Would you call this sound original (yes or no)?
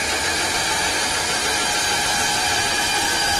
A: yes